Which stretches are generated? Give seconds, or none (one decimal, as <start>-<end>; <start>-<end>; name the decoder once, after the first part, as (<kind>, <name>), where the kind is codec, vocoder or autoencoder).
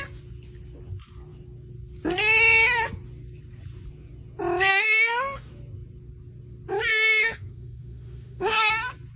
4.7-5.5 (autoencoder, DAC-VAE); 6.9-8.7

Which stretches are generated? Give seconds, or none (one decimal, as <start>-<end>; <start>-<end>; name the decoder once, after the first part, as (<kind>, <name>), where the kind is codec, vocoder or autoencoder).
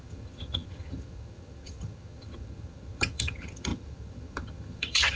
0.0-5.2 (vocoder, HiFi-GAN)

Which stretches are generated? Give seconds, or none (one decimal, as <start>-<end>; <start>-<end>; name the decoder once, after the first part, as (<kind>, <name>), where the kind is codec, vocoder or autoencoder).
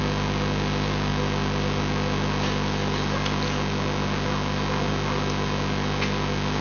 none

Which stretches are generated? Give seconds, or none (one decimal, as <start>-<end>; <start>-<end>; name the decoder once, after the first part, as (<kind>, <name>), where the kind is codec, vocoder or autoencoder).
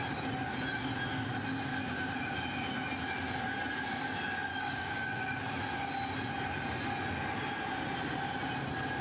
1.7-2.2 (codec, DAC); 4.5-5.6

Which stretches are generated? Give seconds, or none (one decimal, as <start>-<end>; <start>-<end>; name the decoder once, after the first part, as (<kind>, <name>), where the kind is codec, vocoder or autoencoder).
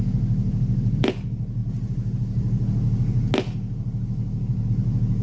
none